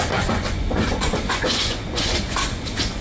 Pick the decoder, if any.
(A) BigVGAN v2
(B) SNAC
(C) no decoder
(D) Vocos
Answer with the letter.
D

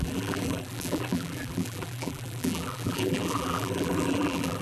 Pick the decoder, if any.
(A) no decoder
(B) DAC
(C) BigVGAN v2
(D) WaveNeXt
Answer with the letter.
C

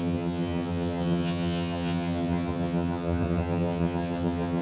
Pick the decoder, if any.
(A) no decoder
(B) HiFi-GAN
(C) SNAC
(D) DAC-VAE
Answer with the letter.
B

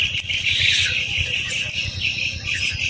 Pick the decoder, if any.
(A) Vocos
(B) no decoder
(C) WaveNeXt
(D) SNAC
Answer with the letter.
B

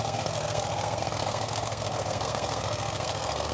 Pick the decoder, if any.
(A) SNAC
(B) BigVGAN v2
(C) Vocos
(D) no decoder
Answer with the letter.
A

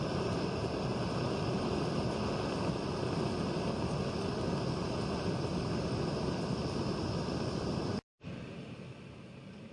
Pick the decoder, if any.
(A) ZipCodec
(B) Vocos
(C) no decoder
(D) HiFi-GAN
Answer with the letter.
C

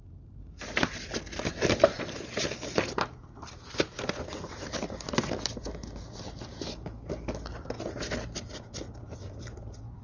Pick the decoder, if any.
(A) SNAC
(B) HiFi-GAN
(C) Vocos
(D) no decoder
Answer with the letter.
D